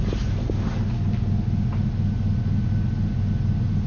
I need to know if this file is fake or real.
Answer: real